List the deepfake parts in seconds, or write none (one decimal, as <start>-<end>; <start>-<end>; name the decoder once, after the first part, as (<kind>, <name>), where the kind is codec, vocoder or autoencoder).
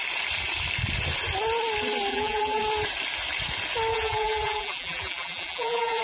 2.1-2.6 (vocoder, BigVGAN v2); 3.9-6.0